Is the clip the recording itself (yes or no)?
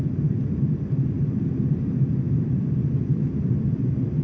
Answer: no